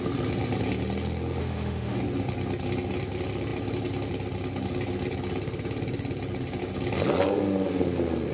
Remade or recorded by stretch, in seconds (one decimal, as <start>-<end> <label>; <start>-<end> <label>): 0.0-1.4 recorded; 1.4-2.0 remade; 2.0-8.3 recorded